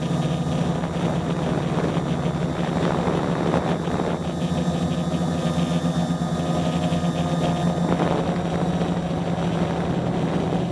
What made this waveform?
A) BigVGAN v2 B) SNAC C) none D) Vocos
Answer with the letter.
C